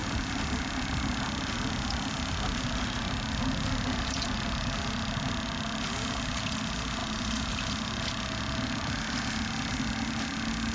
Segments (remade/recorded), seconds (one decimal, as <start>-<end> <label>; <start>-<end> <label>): 0.0-10.7 recorded